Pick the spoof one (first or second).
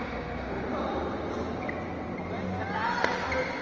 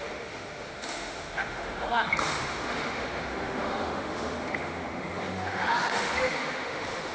second